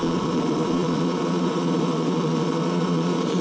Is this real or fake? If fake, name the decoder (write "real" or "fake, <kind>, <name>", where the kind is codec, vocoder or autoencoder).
fake, vocoder, Vocos